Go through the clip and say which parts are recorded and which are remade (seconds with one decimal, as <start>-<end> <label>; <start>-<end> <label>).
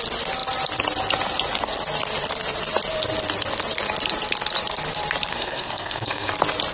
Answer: 0.0-5.3 recorded; 5.3-6.3 remade; 6.3-6.7 recorded